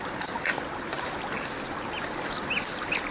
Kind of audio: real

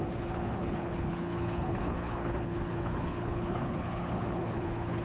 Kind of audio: fake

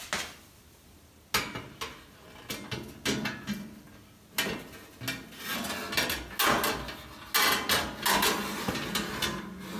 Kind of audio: real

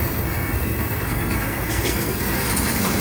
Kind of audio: fake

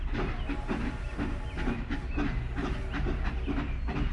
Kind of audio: real